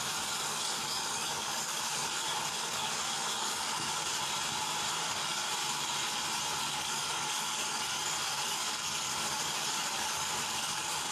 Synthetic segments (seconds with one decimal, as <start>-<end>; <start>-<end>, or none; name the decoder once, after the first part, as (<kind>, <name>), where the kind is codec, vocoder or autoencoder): 0.0-4.1 (codec, DAC); 4.9-5.4; 6.6-11.1